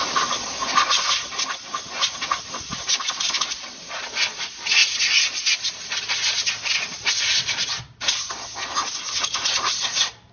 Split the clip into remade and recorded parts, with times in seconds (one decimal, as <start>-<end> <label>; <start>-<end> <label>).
0.0-10.3 recorded

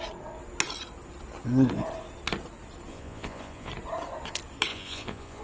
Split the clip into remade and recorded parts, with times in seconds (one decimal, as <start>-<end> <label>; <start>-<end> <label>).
0.0-2.9 recorded; 2.9-3.7 remade; 3.7-4.7 recorded; 4.7-5.4 remade

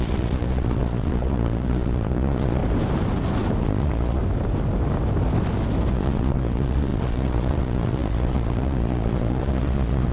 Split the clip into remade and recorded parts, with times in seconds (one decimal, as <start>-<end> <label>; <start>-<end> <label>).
0.0-2.6 remade; 2.6-3.6 recorded; 3.6-4.2 remade; 4.2-5.9 recorded; 5.9-10.1 remade

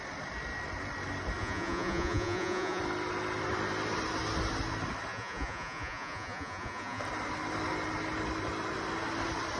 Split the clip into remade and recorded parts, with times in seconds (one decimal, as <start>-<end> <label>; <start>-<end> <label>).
0.0-1.4 recorded; 1.4-2.8 remade; 2.8-5.1 recorded; 5.1-7.0 remade; 7.0-9.6 recorded

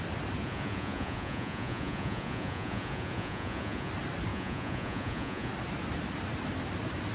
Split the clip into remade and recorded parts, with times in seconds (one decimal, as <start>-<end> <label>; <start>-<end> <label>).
0.0-0.4 recorded; 0.4-3.9 remade; 3.9-4.3 recorded; 4.3-5.5 remade; 5.5-7.1 recorded

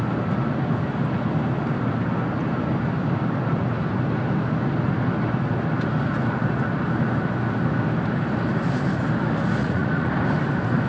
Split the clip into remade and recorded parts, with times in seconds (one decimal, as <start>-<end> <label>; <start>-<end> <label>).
0.0-9.6 recorded; 9.6-10.1 remade; 10.1-10.9 recorded